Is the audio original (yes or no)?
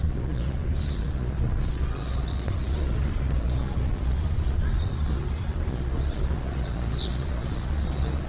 no